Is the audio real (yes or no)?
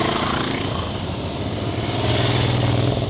yes